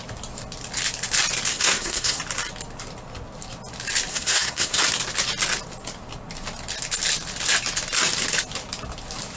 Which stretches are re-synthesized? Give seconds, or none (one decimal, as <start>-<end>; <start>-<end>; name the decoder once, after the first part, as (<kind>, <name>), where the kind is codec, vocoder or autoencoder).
1.5-2.2 (codec, SNAC); 4.1-4.8